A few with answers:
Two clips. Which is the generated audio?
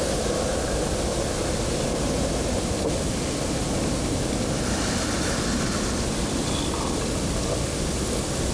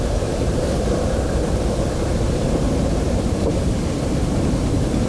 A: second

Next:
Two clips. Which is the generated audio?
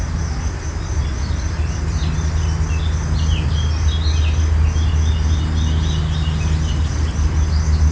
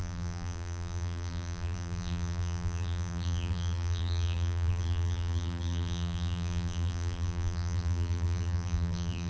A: second